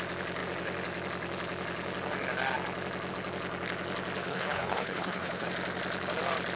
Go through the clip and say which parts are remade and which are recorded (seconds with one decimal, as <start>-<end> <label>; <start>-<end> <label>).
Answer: 0.0-4.2 recorded; 4.2-5.5 remade; 5.5-6.6 recorded